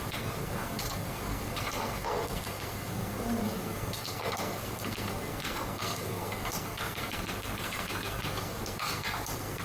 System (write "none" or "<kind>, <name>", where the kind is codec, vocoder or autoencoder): codec, SNAC